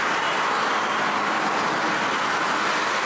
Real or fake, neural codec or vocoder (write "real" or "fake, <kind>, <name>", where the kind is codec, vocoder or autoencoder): real